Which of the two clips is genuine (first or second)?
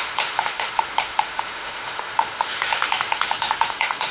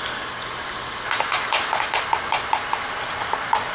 second